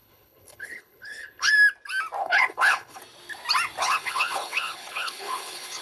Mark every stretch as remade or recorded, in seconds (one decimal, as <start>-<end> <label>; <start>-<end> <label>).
0.0-1.5 remade; 1.5-2.2 recorded; 2.2-3.0 remade; 3.0-3.8 recorded; 3.8-5.8 remade